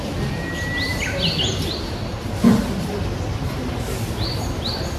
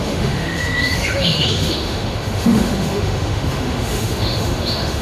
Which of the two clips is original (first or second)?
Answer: first